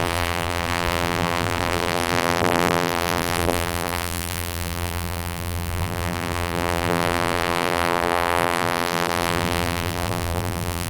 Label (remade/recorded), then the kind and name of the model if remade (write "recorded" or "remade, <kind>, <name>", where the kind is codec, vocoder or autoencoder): remade, vocoder, BigVGAN v2